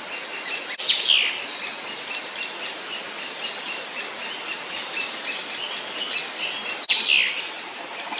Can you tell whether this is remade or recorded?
recorded